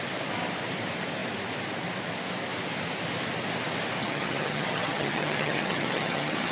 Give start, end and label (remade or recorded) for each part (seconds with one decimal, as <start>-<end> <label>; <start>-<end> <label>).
0.0-4.0 recorded; 4.0-6.5 remade